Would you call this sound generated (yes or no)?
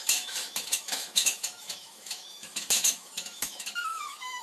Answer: yes